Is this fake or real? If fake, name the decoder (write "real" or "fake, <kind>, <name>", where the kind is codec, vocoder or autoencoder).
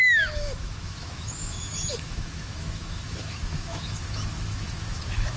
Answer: fake, autoencoder, DAC-VAE